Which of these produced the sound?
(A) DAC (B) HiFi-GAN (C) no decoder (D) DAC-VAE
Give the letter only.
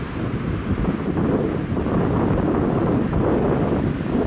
C